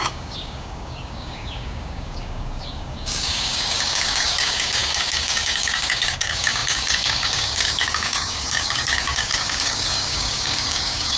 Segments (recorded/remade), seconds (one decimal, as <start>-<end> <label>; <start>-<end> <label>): 0.0-11.2 remade